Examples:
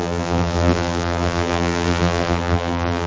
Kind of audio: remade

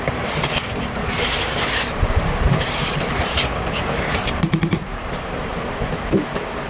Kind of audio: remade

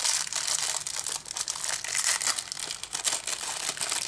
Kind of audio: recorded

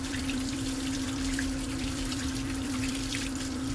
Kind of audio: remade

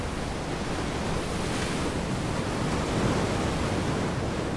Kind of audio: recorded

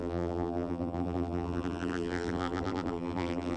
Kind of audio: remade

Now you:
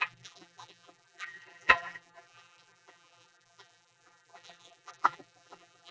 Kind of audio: remade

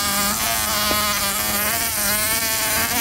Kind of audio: recorded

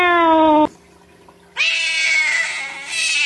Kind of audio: recorded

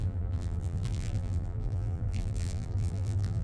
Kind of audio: remade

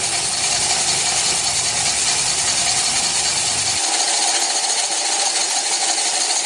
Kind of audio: remade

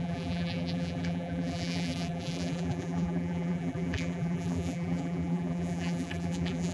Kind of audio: remade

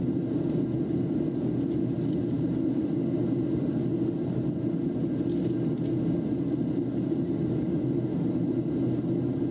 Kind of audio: recorded